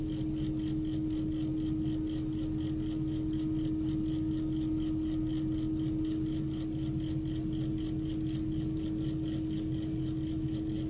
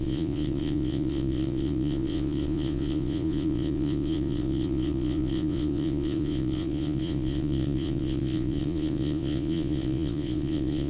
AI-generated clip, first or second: second